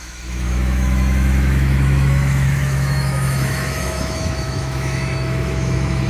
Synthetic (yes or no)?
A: yes